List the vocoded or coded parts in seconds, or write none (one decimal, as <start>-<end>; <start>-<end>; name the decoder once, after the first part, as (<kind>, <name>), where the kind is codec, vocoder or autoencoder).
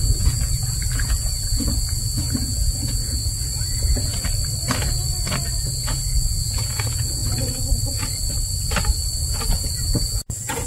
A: 0.0-4.1 (vocoder, Vocos); 5.8-7.2; 9.6-10.7